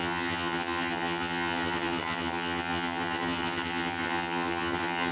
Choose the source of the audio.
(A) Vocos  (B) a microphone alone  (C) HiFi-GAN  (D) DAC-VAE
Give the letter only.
C